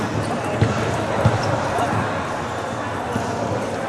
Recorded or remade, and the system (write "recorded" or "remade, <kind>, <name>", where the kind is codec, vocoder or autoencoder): recorded